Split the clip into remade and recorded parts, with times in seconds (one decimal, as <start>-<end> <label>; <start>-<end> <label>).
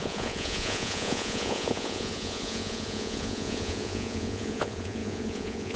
0.0-5.8 remade